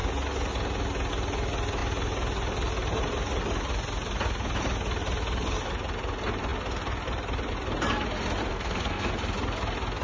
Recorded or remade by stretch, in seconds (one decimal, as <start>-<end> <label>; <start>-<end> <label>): 0.0-8.5 recorded; 8.5-9.1 remade; 9.1-10.0 recorded